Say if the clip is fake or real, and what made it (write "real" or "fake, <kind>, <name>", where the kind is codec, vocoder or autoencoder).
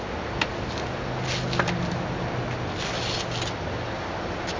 real